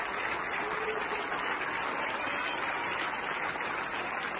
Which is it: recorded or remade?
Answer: recorded